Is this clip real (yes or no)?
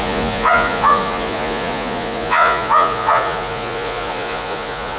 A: no